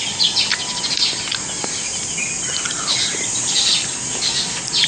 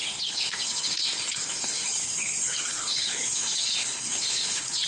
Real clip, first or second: first